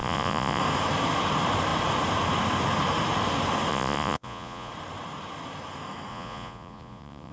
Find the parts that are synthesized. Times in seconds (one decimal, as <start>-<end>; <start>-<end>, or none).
0.0-0.6; 3.7-4.7; 6.1-7.3